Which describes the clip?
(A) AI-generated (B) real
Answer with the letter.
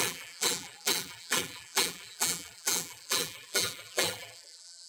A